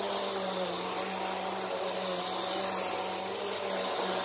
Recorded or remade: recorded